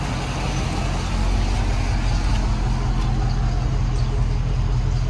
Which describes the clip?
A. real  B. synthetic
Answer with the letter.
A